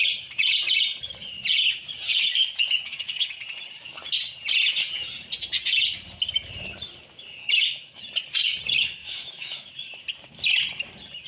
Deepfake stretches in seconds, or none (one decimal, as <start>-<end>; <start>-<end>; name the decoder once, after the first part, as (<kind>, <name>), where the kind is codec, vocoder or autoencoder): 2.6-3.3 (autoencoder, DAC-VAE); 7.4-8.0; 9.0-9.7

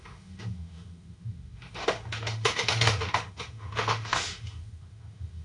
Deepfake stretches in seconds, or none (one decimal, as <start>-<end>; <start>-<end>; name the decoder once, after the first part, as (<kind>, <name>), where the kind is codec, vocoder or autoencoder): 0.0-5.4 (autoencoder, DAC-VAE)

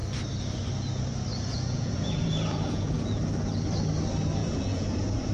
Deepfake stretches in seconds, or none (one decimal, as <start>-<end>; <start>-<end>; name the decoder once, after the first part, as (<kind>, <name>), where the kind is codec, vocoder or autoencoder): 1.3-3.2 (vocoder, Vocos); 4.4-5.3

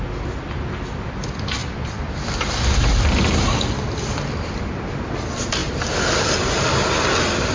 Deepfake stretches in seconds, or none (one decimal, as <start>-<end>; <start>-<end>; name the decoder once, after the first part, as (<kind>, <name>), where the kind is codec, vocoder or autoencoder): 1.6-3.2 (vocoder, BigVGAN v2); 5.6-6.2

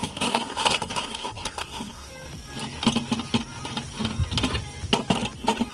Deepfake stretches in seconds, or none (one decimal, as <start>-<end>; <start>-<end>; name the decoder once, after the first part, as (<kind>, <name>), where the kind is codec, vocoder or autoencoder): 0.0-2.1 (codec, SNAC)

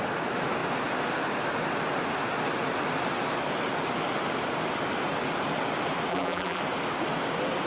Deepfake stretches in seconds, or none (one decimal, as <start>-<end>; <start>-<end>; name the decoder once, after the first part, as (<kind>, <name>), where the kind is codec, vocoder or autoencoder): 6.1-6.6 (vocoder, BigVGAN v2)

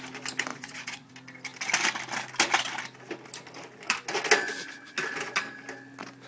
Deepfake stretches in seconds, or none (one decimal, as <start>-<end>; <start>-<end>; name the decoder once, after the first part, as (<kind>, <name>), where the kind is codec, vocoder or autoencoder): 0.5-1.1 (vocoder, Vocos)

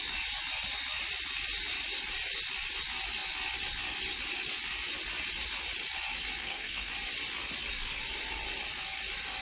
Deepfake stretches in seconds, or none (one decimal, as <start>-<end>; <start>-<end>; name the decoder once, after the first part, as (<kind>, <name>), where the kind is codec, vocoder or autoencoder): 6.4-6.9 (codec, SNAC)